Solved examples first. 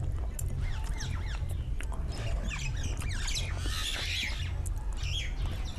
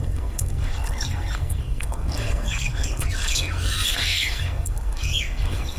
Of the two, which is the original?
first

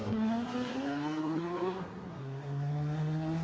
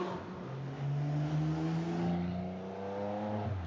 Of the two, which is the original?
second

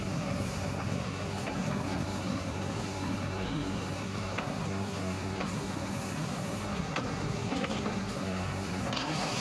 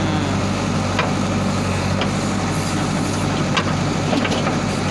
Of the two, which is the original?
second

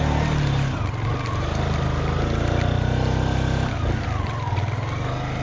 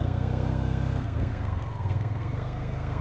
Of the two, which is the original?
first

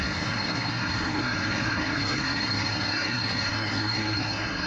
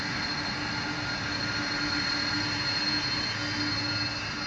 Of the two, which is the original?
second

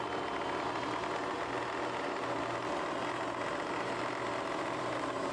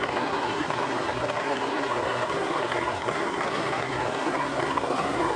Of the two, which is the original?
first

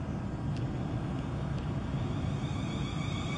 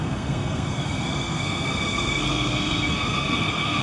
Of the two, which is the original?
first